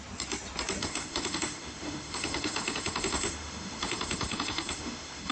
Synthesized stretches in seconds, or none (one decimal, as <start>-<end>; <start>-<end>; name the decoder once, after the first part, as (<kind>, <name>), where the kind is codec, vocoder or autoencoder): 0.8-5.3 (autoencoder, DAC-VAE)